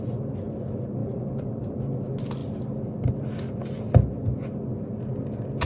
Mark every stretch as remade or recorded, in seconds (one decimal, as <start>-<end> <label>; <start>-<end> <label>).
0.0-1.0 recorded; 1.0-1.8 remade; 1.8-5.6 recorded